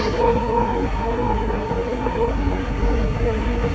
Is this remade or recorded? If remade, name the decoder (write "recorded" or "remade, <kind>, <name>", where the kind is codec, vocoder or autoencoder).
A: remade, codec, SNAC